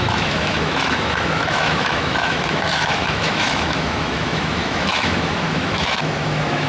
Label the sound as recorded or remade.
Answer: remade